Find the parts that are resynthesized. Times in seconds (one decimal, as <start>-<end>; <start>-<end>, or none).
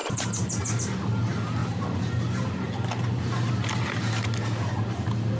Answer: none